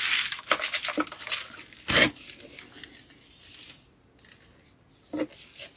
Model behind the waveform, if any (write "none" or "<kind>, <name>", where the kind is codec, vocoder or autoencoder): none